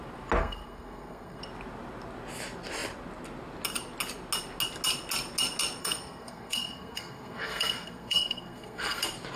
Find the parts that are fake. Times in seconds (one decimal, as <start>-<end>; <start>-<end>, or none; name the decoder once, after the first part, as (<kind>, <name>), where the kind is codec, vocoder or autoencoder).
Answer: 0.4-1.4 (codec, SNAC); 5.8-9.0